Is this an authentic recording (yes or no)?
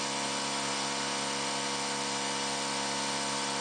yes